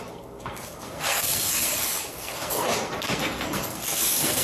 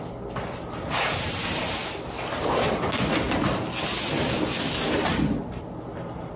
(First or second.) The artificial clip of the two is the first